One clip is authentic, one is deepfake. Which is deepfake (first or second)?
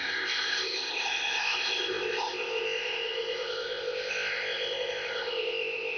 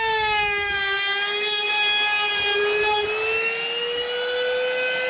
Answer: first